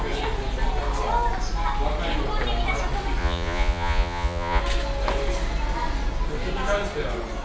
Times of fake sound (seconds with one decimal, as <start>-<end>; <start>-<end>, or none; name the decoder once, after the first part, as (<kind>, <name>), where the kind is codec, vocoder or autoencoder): 3.2-4.6 (vocoder, Vocos)